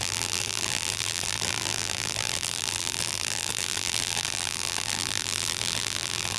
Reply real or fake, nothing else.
fake